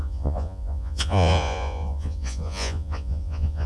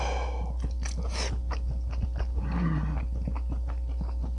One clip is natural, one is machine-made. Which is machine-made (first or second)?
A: first